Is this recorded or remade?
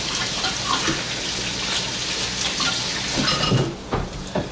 recorded